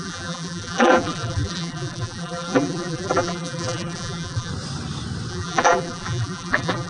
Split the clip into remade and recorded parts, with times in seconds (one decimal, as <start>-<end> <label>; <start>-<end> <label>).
0.0-4.5 remade; 4.5-5.3 recorded; 5.3-6.9 remade